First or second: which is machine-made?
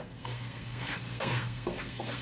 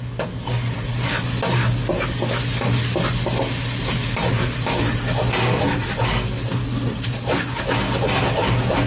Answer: first